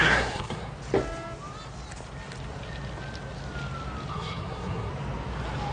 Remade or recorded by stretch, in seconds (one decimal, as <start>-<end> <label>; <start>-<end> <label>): 0.0-0.7 remade; 0.7-4.1 recorded; 4.1-4.9 remade; 4.9-5.7 recorded

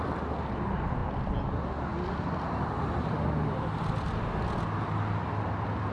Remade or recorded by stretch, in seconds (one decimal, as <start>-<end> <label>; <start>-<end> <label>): 0.0-5.9 recorded

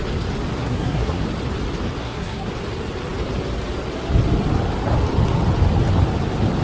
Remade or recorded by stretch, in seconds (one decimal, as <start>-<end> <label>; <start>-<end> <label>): 0.0-0.6 recorded; 0.6-1.2 remade; 1.2-2.0 recorded; 2.0-2.5 remade; 2.5-6.6 recorded

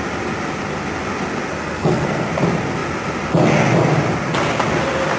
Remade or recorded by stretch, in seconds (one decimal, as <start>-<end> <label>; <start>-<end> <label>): 0.0-1.5 recorded; 1.5-2.3 remade; 2.3-5.2 recorded

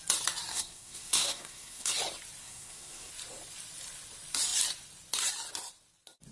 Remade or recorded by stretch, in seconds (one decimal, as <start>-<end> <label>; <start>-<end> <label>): 0.0-0.5 recorded; 0.5-1.9 remade; 1.9-2.4 recorded; 2.4-3.1 remade; 3.1-6.3 recorded